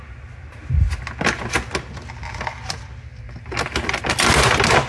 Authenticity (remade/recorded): recorded